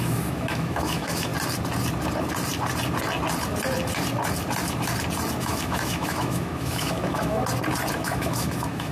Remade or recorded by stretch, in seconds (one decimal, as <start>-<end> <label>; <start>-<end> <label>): 0.0-1.3 remade; 1.3-5.4 recorded; 5.4-7.4 remade; 7.4-7.9 recorded; 7.9-8.9 remade